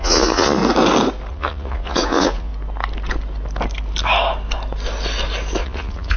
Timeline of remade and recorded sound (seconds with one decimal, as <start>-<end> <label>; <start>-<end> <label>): 0.0-0.6 remade; 0.6-1.3 recorded; 1.3-2.5 remade; 2.5-5.6 recorded; 5.6-6.2 remade